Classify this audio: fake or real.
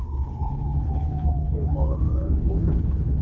fake